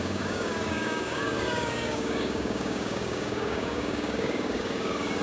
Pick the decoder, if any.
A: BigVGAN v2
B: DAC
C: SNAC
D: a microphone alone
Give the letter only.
B